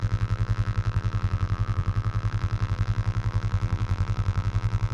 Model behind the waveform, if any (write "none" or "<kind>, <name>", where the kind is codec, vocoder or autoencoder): vocoder, BigVGAN v2